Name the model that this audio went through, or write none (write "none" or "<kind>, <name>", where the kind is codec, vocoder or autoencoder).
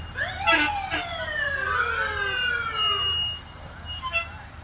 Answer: none